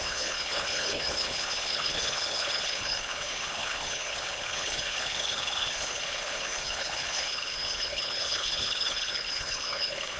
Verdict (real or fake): fake